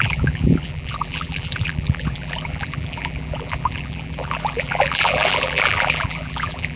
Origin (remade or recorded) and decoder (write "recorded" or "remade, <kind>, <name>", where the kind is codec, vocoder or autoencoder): remade, vocoder, BigVGAN v2